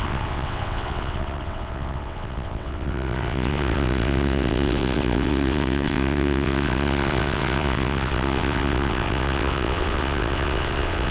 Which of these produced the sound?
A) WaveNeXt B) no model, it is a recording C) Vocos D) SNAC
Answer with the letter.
A